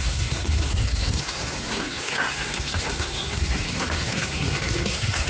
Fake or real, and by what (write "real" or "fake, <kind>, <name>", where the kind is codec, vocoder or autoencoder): fake, codec, SNAC